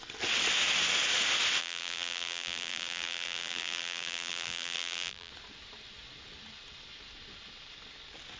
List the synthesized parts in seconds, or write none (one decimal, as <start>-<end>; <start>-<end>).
1.6-5.3